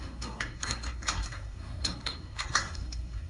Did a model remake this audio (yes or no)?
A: yes